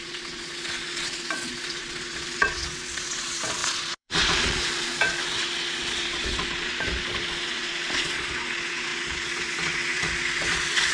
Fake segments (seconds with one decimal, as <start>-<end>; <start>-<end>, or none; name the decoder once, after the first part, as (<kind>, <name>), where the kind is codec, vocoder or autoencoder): 0.0-10.9 (vocoder, Vocos)